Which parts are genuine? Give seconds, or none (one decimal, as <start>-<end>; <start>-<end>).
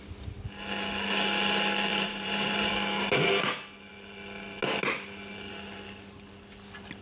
0.0-1.9; 2.7-7.0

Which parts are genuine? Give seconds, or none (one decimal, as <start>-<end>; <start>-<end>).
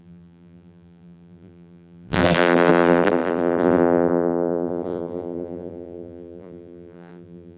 none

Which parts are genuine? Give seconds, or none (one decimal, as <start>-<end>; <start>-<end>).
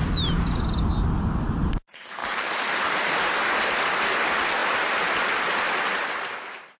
0.0-2.2; 3.2-6.8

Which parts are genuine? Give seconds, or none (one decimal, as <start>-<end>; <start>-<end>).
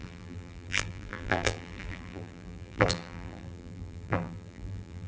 none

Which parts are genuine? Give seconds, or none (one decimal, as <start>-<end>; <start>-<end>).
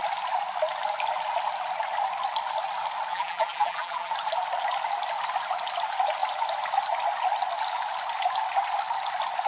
0.0-3.1; 4.1-9.5